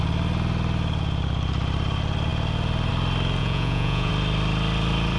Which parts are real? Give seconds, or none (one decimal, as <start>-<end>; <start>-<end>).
0.0-3.4; 4.1-5.2